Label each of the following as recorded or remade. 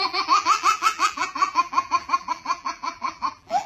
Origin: remade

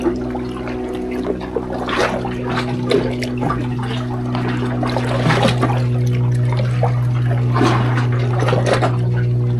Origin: recorded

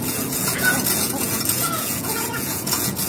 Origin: remade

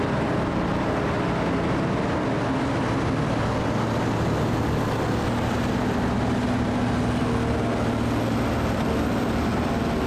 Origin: recorded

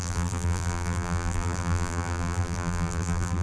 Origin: remade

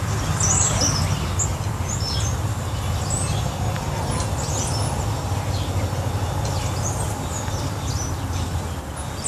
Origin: recorded